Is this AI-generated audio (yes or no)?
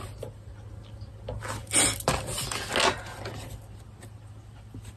no